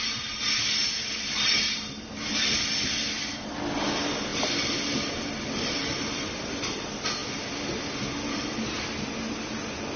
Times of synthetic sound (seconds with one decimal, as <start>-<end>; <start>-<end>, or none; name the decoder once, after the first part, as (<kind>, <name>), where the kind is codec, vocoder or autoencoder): none